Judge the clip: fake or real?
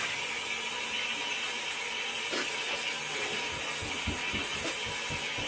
real